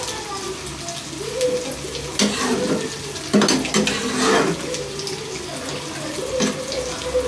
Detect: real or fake real